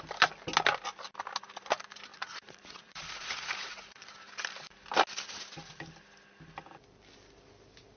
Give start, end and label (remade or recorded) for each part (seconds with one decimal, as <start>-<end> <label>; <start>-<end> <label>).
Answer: 0.0-2.1 recorded; 2.1-4.1 remade; 4.1-8.0 recorded